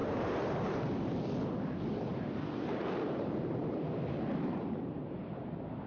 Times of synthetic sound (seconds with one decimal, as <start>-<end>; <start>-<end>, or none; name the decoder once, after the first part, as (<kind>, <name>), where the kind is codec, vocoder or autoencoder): 0.0-1.1 (vocoder, BigVGAN v2); 2.1-5.9